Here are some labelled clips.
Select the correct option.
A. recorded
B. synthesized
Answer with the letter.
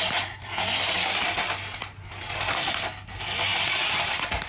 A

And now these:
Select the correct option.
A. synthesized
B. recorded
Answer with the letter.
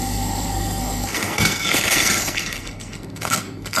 A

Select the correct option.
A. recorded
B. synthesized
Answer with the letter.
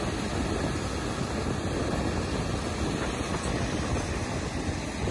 A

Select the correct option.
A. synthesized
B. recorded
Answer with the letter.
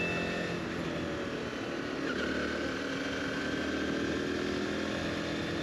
B